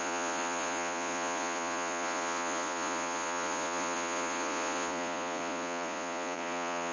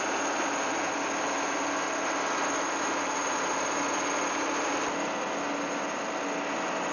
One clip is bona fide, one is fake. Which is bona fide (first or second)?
second